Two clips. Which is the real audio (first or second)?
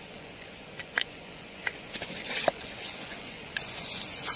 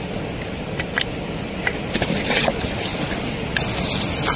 second